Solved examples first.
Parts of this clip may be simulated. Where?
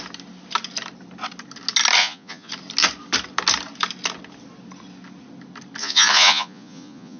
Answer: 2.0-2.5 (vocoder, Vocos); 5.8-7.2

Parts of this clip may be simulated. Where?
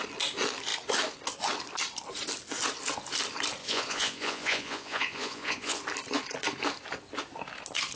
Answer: 3.6-5.8 (vocoder, Vocos)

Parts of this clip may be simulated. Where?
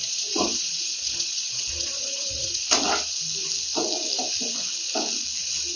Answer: 0.0-2.7 (vocoder, Vocos)